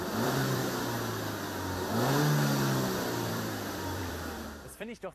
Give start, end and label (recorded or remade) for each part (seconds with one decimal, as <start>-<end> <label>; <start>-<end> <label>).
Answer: 0.0-0.6 remade; 0.6-3.3 recorded; 3.3-5.1 remade